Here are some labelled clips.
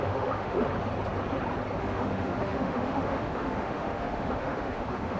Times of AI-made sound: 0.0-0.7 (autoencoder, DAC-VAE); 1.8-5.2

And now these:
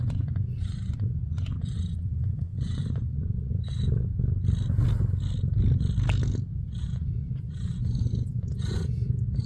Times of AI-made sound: 0.0-4.1 (vocoder, Vocos); 6.8-9.5

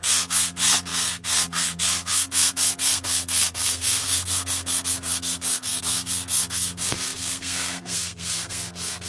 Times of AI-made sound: 0.0-9.1 (codec, SNAC)

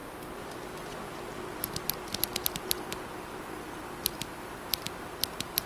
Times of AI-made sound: 2.5-5.7 (vocoder, BigVGAN v2)

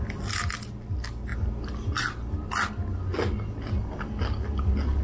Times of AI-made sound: none

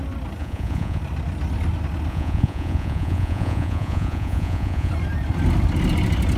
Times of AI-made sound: 0.4-1.0 (vocoder, Vocos); 2.1-4.9